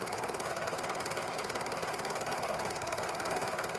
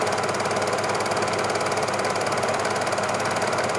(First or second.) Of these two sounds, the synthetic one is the first